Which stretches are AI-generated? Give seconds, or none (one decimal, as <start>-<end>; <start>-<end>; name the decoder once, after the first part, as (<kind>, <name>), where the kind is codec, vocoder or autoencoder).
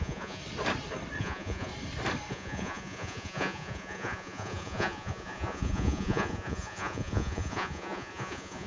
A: 0.0-0.4 (vocoder, Vocos); 1.2-1.7; 2.3-8.7